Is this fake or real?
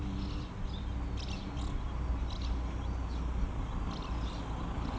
real